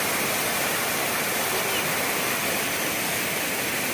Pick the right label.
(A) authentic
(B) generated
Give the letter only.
A